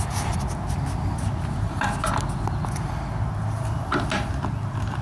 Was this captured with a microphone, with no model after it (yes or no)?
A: yes